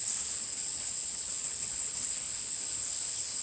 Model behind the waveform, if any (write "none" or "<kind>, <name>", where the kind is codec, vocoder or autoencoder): codec, HILCodec